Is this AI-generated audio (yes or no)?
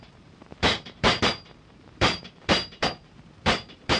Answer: yes